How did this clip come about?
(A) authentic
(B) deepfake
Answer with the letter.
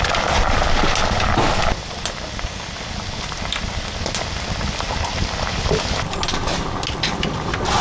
A